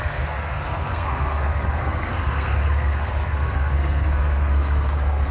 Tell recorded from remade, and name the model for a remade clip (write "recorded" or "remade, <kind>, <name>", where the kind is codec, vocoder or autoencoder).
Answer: remade, codec, SNAC